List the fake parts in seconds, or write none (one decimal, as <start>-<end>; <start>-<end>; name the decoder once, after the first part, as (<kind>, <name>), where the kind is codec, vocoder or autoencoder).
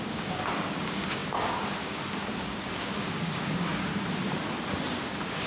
0.0-3.9 (codec, DAC); 5.0-5.5